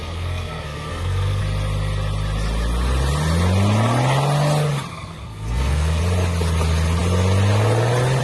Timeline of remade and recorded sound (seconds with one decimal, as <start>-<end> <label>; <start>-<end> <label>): 0.0-1.4 remade; 1.4-4.9 recorded; 4.9-6.0 remade; 6.0-8.2 recorded